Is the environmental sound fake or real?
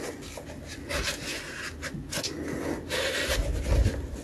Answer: real